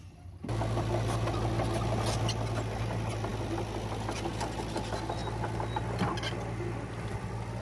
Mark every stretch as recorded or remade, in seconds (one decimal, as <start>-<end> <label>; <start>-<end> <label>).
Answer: 0.0-7.6 recorded